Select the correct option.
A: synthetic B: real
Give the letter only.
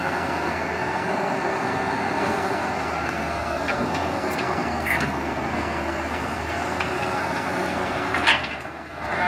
A